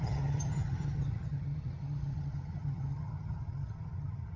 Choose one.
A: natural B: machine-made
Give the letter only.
B